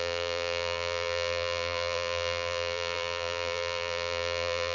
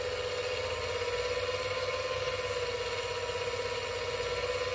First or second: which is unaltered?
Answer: second